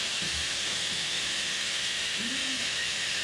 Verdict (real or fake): fake